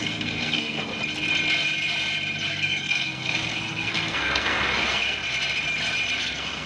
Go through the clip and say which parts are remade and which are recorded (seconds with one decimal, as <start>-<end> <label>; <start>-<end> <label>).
0.0-0.9 remade; 0.9-2.5 recorded; 2.5-5.2 remade; 5.2-6.2 recorded; 6.2-6.7 remade